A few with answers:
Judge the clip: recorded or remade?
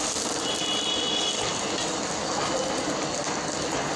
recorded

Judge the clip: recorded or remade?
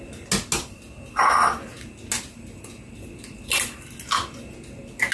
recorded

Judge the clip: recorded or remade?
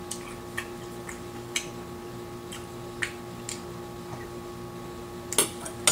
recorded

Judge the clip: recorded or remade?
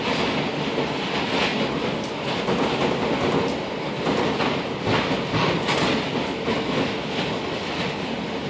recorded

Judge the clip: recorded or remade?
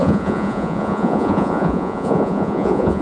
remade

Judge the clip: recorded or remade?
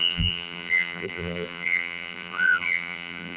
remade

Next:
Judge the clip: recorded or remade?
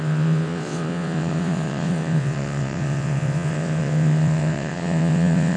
remade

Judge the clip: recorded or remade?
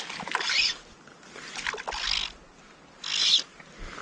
recorded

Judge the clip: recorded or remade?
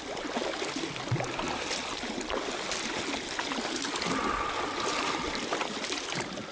recorded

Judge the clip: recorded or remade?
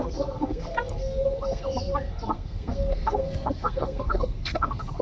remade